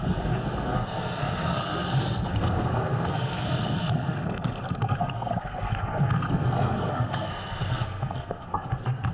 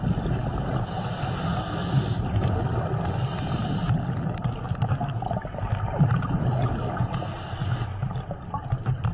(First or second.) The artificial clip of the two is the first